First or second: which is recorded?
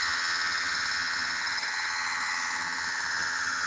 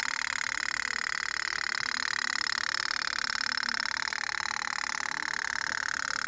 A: second